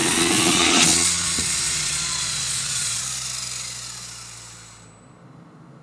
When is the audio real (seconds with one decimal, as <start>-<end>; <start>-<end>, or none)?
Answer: 3.0-5.8